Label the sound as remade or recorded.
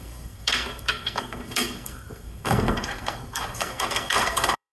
remade